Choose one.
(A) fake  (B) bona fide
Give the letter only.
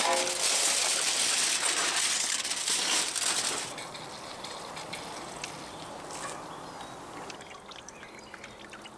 B